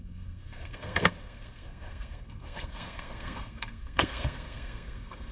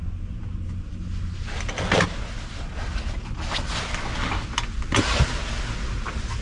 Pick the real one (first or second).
second